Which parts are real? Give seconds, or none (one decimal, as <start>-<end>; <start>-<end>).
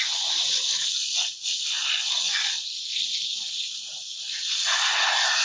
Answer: 0.0-5.4